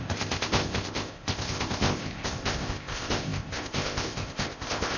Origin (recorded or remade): remade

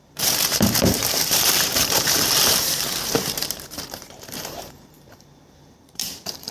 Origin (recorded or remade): remade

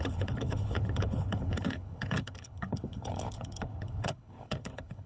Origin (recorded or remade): remade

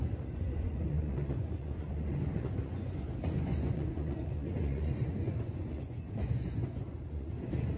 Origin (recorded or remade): remade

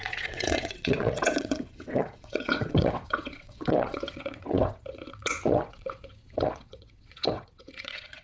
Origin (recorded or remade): remade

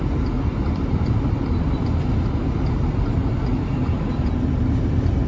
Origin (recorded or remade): remade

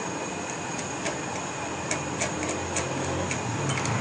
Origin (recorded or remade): recorded